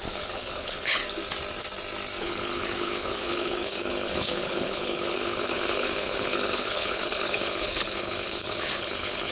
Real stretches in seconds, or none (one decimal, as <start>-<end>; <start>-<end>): 1.0-2.2